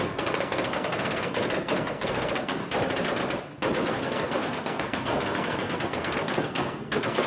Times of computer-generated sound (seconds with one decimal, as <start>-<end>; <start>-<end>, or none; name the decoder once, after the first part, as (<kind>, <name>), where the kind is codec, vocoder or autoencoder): 0.0-2.6 (codec, SNAC); 3.9-7.3